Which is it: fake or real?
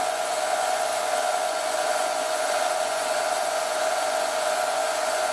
fake